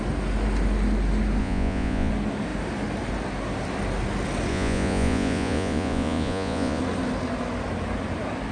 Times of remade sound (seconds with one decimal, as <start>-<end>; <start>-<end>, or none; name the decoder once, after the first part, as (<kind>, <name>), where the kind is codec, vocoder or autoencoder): 1.4-2.1 (vocoder, Vocos); 4.5-6.8